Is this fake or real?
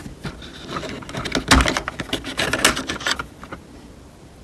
real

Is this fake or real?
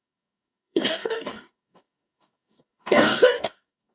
fake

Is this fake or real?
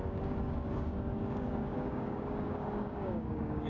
fake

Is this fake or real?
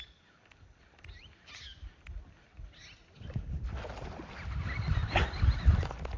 real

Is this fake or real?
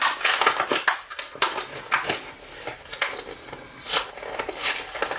real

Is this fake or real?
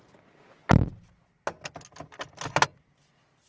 real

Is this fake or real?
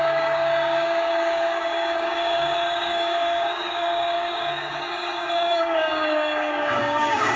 fake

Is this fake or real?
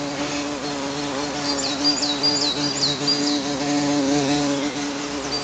real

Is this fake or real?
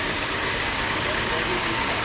fake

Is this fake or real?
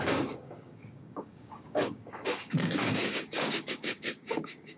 fake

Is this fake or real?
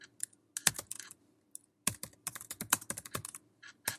real